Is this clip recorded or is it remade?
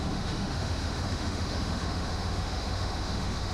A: remade